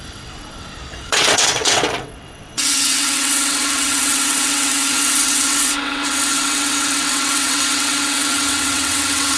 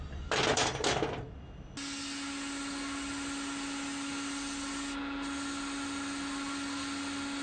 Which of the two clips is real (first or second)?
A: second